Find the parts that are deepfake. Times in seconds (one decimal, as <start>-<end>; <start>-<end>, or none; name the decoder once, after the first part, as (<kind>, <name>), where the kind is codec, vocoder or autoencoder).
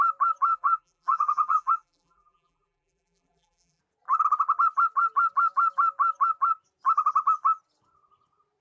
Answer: 0.5-3.8 (vocoder, BigVGAN v2)